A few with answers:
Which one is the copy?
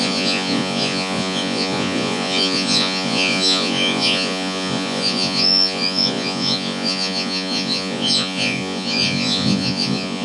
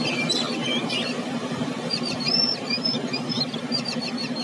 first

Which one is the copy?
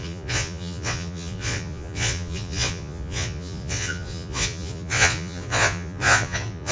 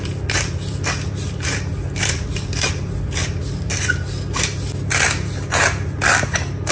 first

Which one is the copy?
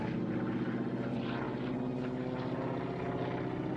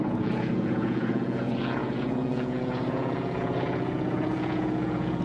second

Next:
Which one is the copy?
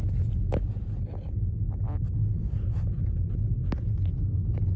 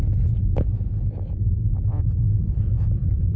second